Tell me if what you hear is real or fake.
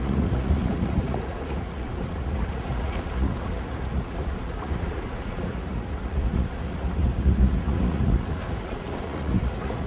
fake